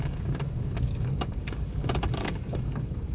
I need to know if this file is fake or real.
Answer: fake